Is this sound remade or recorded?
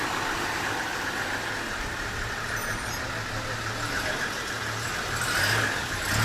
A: recorded